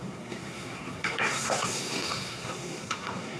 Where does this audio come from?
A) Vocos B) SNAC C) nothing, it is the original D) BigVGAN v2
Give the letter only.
B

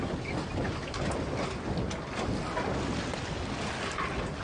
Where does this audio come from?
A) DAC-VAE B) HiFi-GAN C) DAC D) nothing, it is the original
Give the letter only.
D